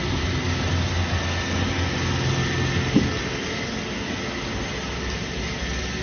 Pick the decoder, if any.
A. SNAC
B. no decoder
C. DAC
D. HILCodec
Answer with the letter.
B